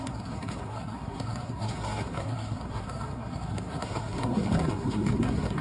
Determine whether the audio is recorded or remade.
remade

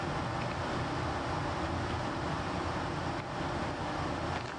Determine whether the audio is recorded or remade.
recorded